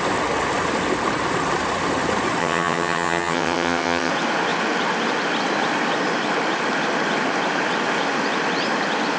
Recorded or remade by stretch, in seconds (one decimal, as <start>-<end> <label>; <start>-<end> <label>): 0.0-2.4 recorded; 2.4-4.1 remade; 4.1-9.2 recorded